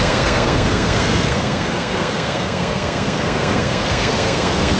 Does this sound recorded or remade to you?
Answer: remade